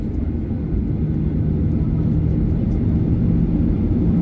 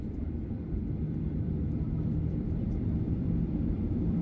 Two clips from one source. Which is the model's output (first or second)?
second